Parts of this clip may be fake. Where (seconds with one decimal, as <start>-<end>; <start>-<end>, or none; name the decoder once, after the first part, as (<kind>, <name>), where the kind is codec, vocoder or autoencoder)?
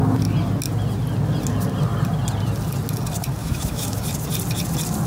3.4-4.0 (autoencoder, DAC-VAE)